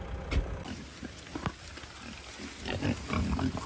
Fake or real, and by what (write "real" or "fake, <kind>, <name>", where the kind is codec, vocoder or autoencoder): real